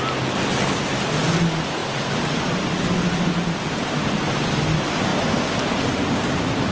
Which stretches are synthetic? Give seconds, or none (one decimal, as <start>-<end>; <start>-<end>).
none